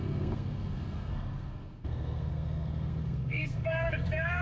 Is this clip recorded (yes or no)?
no